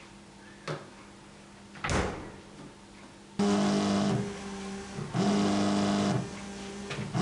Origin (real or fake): real